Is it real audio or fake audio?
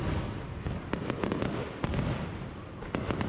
real